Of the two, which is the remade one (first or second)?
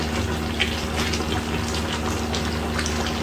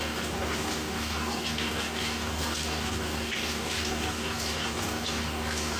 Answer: second